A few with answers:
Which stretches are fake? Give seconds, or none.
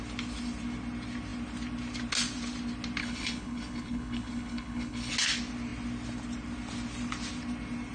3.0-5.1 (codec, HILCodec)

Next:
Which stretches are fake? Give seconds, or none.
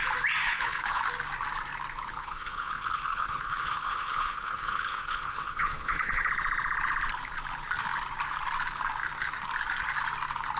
0.4-1.0 (codec, HILCodec); 2.1-6.3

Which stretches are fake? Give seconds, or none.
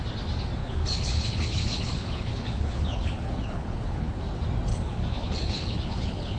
0.6-4.2 (codec, HILCodec); 4.7-6.4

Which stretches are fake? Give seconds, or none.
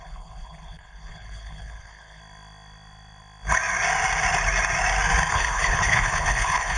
0.0-2.2 (codec, HILCodec); 5.3-6.8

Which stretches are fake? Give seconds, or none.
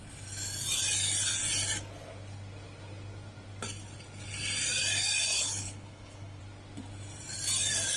5.3-6.4 (codec, HILCodec)